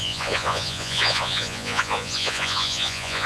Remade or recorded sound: remade